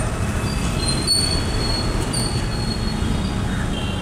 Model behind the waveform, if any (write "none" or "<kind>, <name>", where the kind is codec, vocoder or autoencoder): none